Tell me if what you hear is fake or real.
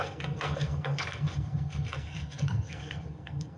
fake